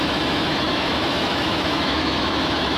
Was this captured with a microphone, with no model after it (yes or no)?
no